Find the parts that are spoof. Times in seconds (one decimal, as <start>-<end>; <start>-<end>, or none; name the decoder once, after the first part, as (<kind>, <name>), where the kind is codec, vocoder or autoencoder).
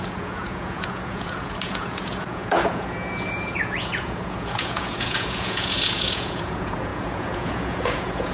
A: 0.0-8.3 (vocoder, Vocos)